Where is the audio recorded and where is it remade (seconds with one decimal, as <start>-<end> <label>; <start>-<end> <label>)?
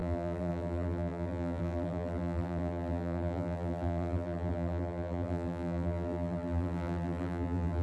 0.0-7.8 remade